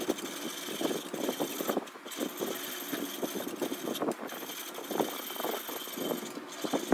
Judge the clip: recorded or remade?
recorded